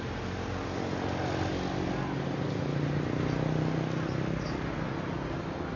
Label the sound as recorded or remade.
recorded